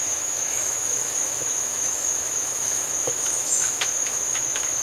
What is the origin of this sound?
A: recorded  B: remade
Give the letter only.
B